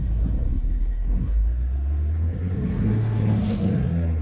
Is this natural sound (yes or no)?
no